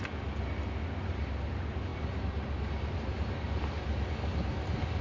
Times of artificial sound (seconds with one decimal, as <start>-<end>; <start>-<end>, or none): none